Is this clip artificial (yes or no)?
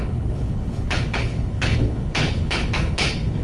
yes